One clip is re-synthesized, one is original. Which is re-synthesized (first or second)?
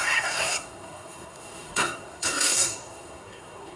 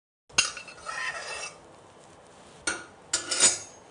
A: first